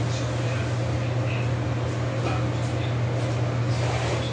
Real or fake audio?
real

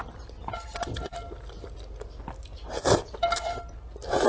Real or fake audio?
real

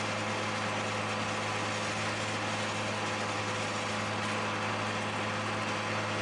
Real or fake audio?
real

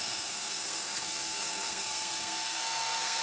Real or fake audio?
fake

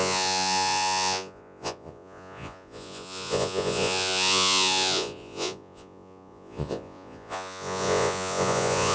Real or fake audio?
fake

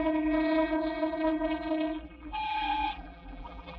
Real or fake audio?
fake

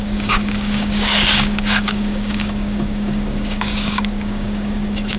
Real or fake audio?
fake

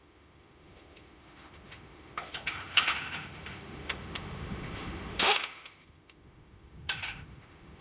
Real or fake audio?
fake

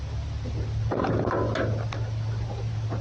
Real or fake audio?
real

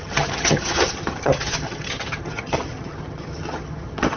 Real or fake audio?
fake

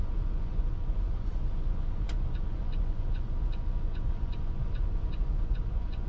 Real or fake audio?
fake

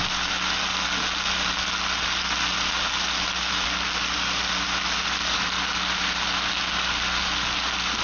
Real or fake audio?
real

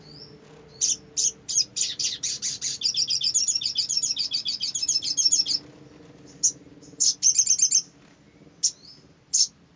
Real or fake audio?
real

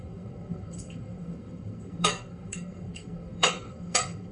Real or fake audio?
fake